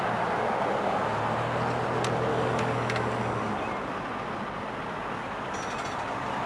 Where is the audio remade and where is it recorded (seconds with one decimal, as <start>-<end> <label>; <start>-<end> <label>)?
0.0-2.3 recorded; 2.3-3.5 remade; 3.5-6.5 recorded